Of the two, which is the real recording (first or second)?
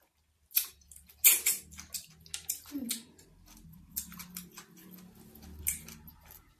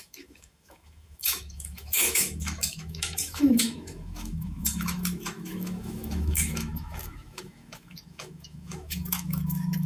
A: first